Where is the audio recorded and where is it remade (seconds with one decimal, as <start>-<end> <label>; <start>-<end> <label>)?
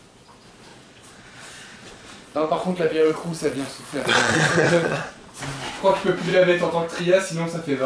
0.0-0.7 recorded; 0.7-5.4 remade; 5.4-7.9 recorded